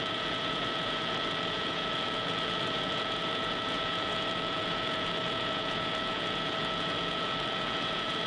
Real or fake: fake